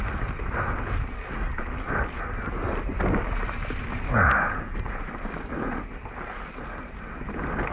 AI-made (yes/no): no